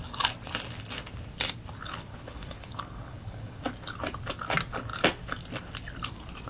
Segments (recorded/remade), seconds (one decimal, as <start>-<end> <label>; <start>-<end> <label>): 0.0-2.1 recorded; 2.1-3.6 remade; 3.6-6.5 recorded